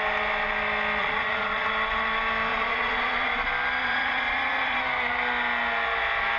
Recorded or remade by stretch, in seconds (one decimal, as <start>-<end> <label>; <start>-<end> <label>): 0.0-1.0 recorded; 1.0-1.7 remade; 1.7-2.5 recorded; 2.5-3.3 remade; 3.3-3.8 recorded; 3.8-4.8 remade; 4.8-6.4 recorded